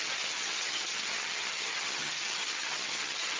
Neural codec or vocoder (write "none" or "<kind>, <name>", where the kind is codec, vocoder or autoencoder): vocoder, HiFi-GAN